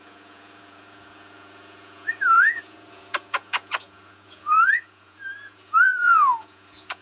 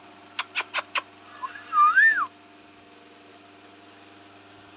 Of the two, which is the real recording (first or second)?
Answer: second